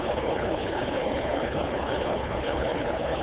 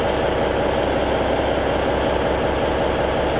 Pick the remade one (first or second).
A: first